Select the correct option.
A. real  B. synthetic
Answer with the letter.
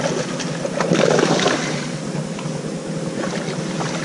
A